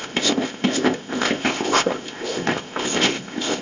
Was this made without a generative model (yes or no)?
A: no